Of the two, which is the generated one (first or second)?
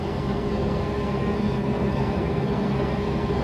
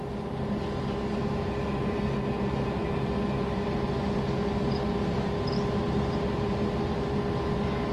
first